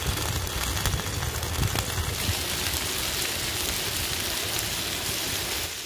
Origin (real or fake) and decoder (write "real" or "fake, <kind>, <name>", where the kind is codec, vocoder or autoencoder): real